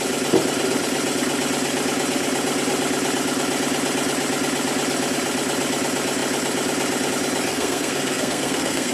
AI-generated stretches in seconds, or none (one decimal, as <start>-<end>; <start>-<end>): 7.5-8.9